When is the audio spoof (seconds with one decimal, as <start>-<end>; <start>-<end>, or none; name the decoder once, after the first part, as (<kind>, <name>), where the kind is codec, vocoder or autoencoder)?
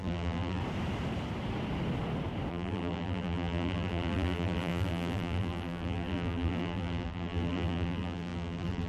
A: 0.0-0.6 (vocoder, BigVGAN v2); 2.5-8.9